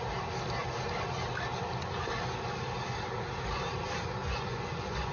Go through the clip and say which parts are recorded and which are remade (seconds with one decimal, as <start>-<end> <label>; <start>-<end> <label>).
0.0-4.2 recorded; 4.2-5.1 remade